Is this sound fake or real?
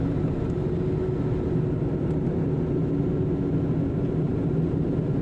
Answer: real